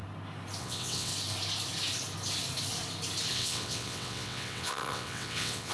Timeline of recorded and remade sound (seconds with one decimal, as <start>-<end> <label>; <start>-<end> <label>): 0.0-0.6 recorded; 0.6-1.1 remade; 1.1-3.3 recorded; 3.3-5.7 remade